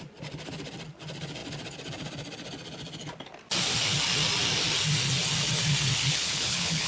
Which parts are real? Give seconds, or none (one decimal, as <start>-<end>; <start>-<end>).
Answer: 0.0-5.9